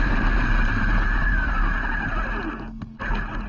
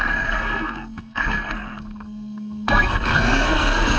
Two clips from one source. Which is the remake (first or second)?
second